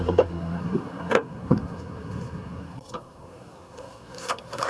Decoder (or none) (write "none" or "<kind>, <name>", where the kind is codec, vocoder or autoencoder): codec, SNAC